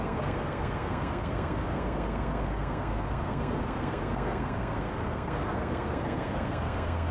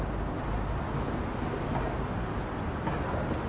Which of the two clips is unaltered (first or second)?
second